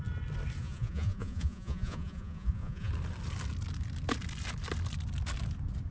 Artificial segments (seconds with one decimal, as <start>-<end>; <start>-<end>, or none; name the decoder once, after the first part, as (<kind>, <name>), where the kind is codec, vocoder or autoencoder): 0.6-2.9 (vocoder, Vocos)